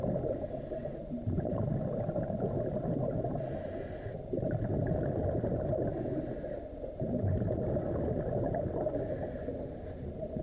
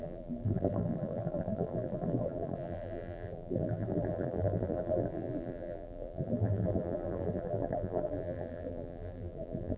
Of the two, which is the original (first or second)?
first